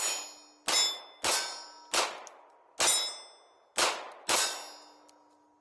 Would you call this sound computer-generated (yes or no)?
no